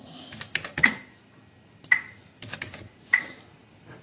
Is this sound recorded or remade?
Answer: recorded